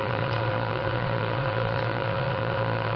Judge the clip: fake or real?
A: fake